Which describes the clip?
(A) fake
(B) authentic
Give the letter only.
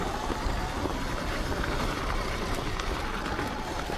A